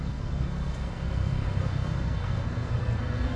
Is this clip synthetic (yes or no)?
yes